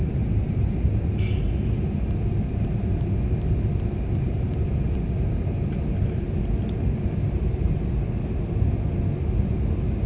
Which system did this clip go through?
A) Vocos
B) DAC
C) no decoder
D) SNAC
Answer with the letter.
C